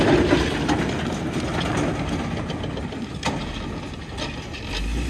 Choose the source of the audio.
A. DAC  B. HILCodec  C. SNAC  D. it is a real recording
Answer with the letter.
D